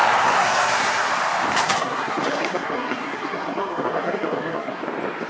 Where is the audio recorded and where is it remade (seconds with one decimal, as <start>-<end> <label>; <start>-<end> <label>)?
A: 0.0-1.1 remade; 1.1-1.6 recorded; 1.6-4.8 remade; 4.8-5.3 recorded